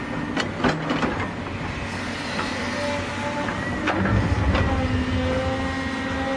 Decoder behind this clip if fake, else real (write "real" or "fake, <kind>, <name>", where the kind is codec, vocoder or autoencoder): real